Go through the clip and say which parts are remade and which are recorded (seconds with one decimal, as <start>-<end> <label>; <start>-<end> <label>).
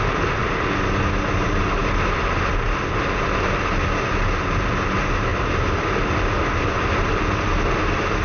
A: 0.0-8.2 recorded